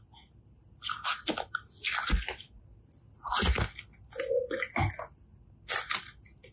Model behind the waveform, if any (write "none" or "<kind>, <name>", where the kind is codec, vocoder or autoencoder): none